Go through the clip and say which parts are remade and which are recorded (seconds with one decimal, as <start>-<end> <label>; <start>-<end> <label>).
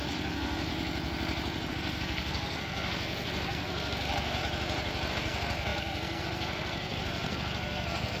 0.0-0.7 remade; 0.7-1.7 recorded; 1.7-4.4 remade; 4.4-5.1 recorded; 5.1-8.2 remade